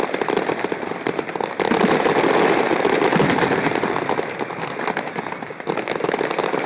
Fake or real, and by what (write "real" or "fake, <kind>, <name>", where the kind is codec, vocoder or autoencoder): fake, vocoder, BigVGAN v2